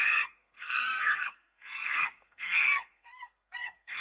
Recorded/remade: remade